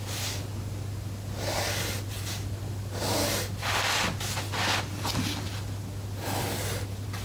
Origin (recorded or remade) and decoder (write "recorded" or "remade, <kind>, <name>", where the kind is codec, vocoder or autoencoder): recorded